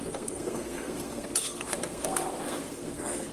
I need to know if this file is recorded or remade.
remade